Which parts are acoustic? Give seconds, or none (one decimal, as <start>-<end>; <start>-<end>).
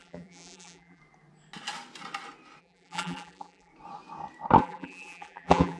1.0-2.6; 3.7-4.6